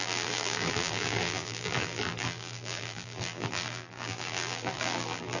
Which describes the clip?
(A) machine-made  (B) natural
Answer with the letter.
A